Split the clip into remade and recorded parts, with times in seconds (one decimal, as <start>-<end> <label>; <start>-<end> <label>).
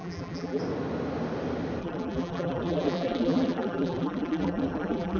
0.0-0.6 remade; 0.6-1.8 recorded; 1.8-5.2 remade